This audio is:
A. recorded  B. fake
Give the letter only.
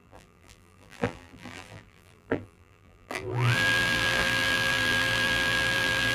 B